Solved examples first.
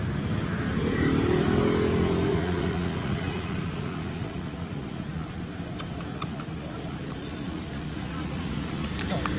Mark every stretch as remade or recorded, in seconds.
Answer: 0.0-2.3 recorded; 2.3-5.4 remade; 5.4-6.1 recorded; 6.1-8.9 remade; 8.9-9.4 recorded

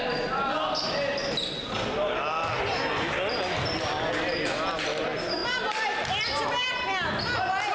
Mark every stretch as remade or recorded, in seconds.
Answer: 0.0-7.7 recorded

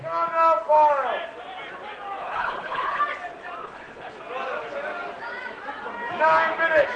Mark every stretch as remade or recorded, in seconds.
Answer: 0.0-2.2 recorded; 2.2-3.0 remade; 3.0-3.6 recorded; 3.6-4.2 remade; 4.2-7.0 recorded

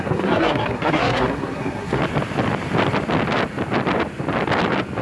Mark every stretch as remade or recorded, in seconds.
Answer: 0.0-2.0 remade; 2.0-5.0 recorded

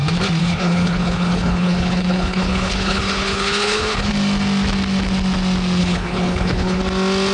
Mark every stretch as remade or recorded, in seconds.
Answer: 0.0-0.4 recorded; 0.4-4.1 remade; 4.1-5.8 recorded; 5.8-6.8 remade; 6.8-7.3 recorded

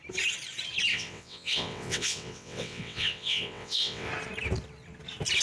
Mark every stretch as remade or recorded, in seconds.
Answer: 0.0-0.9 recorded; 0.9-4.1 remade; 4.1-5.4 recorded

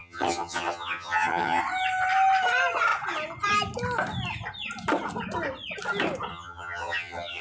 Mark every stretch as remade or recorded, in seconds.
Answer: 0.0-1.6 remade; 1.6-6.3 recorded; 6.3-7.4 remade